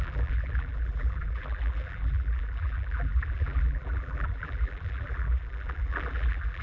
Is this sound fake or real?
fake